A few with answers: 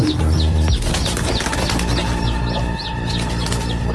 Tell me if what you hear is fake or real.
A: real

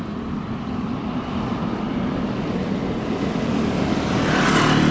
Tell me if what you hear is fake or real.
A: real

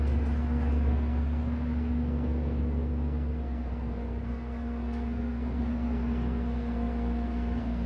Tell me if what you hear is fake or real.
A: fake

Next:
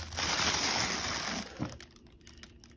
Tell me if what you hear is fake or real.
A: real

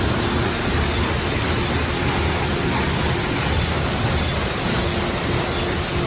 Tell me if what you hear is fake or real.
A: real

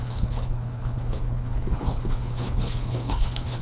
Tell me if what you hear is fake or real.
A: fake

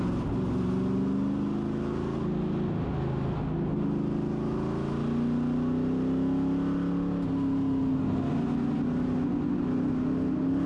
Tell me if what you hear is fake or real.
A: real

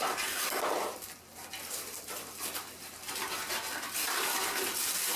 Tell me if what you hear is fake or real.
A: fake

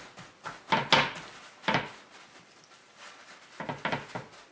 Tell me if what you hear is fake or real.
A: real